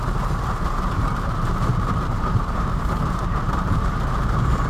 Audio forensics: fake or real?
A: fake